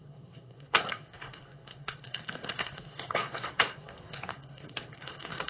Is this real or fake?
fake